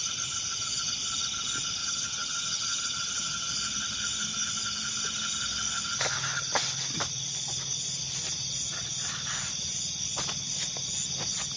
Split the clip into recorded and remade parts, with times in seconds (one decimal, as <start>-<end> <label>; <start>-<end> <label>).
0.0-1.8 recorded; 1.8-3.5 remade; 3.5-11.6 recorded